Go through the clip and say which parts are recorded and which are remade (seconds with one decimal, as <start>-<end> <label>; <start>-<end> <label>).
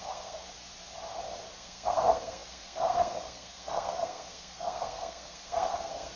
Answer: 0.0-0.5 remade; 0.5-1.5 recorded; 1.5-6.2 remade